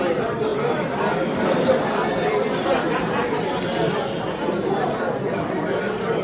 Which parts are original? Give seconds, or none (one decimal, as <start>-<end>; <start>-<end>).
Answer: none